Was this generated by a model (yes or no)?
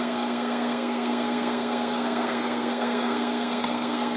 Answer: yes